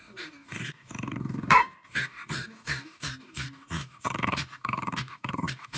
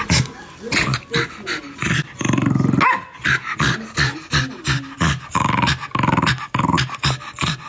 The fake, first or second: first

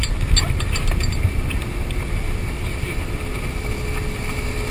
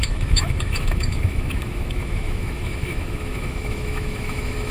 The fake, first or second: second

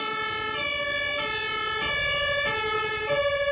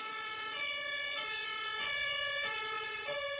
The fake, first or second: second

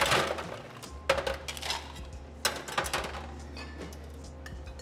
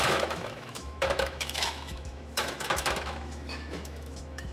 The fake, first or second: second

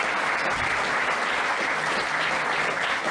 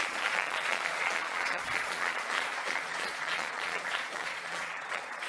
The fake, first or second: second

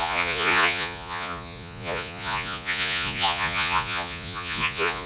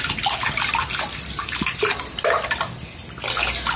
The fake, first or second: first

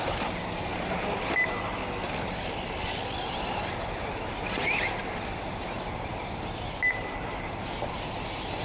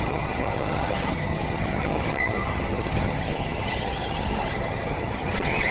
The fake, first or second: second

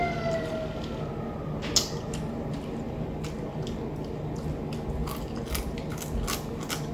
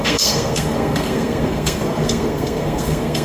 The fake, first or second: second